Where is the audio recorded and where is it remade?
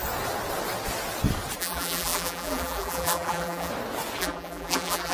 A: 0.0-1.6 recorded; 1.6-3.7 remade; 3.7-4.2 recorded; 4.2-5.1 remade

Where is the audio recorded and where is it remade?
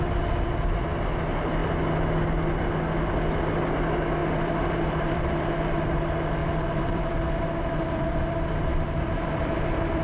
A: 0.0-4.2 recorded; 4.2-5.3 remade; 5.3-6.4 recorded; 6.4-10.0 remade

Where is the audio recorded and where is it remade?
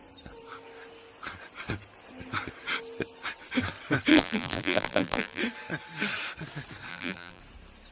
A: 0.0-4.1 recorded; 4.1-5.4 remade; 5.4-6.9 recorded; 6.9-7.4 remade; 7.4-7.9 recorded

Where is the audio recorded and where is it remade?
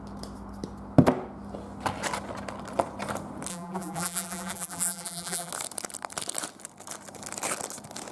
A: 0.0-3.5 recorded; 3.5-5.5 remade; 5.5-8.1 recorded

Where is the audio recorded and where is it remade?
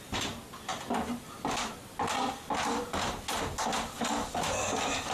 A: 0.0-5.1 recorded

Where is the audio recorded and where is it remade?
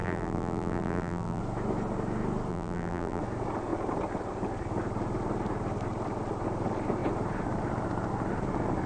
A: 0.0-1.4 remade; 1.4-2.5 recorded; 2.5-3.2 remade; 3.2-8.9 recorded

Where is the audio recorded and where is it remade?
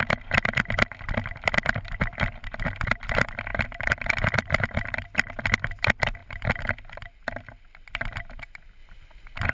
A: 0.0-3.5 recorded; 3.5-5.3 remade; 5.3-8.8 recorded; 8.8-9.5 remade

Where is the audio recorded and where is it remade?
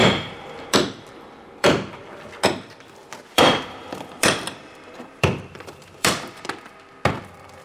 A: 0.0-2.1 remade; 2.1-3.0 recorded; 3.0-6.2 remade; 6.2-7.6 recorded